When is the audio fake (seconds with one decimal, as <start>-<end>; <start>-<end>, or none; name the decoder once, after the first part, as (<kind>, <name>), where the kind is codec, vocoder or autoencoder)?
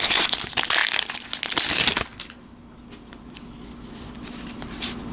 none